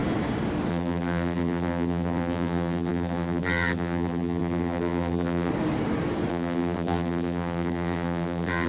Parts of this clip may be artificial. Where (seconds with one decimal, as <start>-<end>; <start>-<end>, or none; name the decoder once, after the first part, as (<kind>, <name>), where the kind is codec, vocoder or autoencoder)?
0.7-5.5 (vocoder, BigVGAN v2); 6.3-8.7